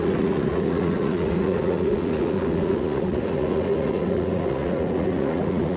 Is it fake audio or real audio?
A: fake